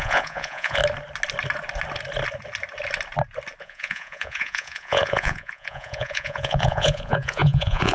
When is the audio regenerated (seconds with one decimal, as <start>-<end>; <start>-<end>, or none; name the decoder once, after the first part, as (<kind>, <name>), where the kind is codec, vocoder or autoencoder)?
0.0-0.8 (vocoder, Vocos); 3.6-7.9